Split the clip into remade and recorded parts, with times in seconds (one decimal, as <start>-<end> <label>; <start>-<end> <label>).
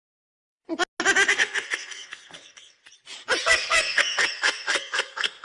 0.0-0.6 remade; 0.6-1.3 recorded; 1.3-2.8 remade; 2.8-3.4 recorded; 3.4-5.4 remade